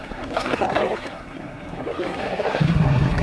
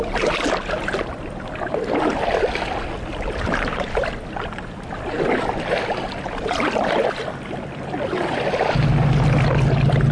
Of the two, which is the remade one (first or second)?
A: first